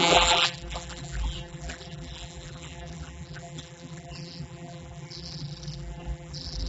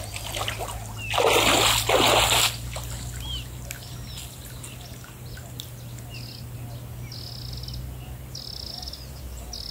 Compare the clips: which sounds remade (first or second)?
first